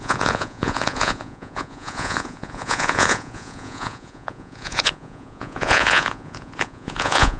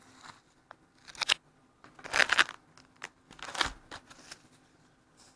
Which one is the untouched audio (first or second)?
second